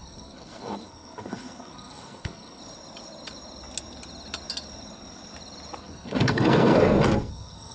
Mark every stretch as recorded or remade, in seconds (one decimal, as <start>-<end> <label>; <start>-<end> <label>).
0.0-2.6 remade; 2.6-5.8 recorded; 5.8-7.7 remade

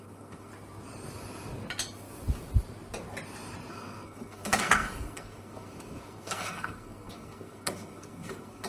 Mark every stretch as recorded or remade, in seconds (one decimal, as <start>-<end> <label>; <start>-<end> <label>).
0.0-0.5 remade; 0.5-3.7 recorded; 3.7-8.7 remade

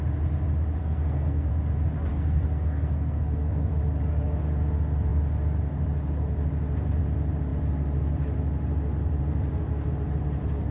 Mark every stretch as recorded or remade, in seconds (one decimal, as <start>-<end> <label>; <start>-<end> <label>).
0.0-0.8 recorded; 0.8-1.5 remade; 1.5-2.1 recorded; 2.1-3.7 remade; 3.7-10.7 recorded